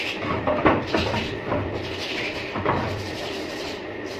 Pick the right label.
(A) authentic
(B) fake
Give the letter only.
A